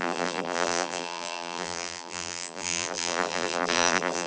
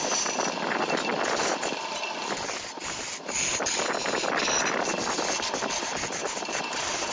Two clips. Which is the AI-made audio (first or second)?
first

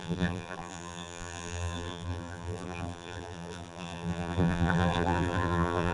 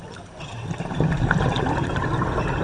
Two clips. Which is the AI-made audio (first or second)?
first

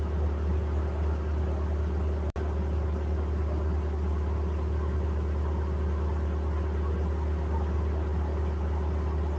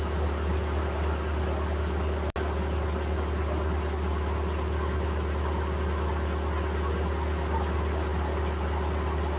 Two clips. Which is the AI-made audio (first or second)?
first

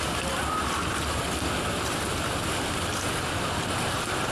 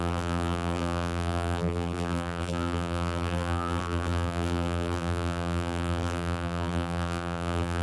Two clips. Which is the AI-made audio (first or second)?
second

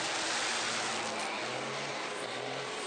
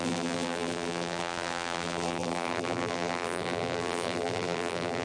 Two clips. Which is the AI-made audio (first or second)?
second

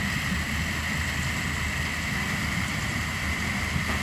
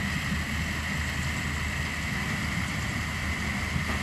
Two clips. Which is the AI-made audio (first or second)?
first